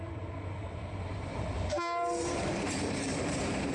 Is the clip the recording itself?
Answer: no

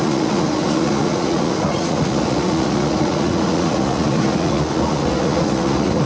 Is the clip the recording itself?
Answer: no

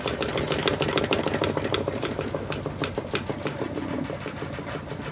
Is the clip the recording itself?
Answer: yes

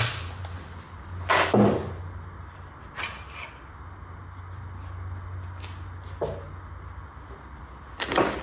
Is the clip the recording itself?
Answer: yes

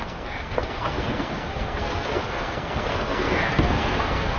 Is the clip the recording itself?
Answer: no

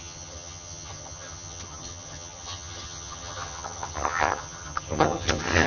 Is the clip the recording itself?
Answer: no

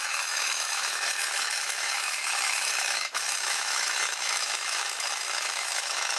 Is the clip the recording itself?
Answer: no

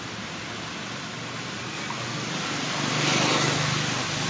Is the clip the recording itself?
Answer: yes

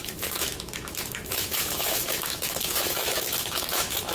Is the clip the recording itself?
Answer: no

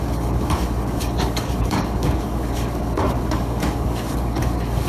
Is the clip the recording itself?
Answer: no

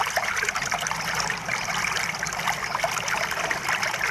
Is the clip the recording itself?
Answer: yes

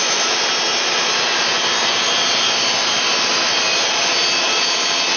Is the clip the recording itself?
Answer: yes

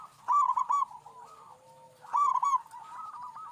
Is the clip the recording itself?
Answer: yes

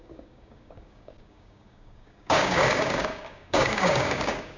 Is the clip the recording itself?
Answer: no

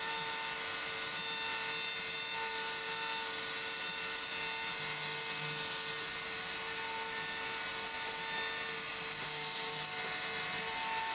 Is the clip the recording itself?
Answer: yes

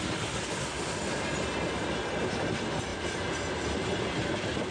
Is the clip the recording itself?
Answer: yes